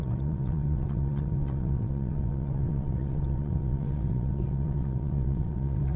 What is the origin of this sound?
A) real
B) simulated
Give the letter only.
B